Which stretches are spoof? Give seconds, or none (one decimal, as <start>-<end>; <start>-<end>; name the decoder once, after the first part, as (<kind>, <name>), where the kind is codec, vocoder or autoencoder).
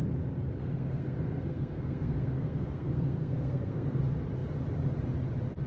0.6-4.0 (codec, SNAC)